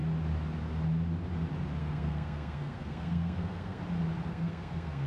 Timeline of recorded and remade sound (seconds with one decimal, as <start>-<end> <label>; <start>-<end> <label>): 0.0-1.8 recorded; 1.8-3.8 remade; 3.8-4.3 recorded; 4.3-5.1 remade